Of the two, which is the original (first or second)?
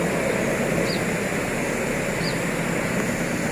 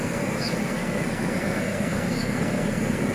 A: first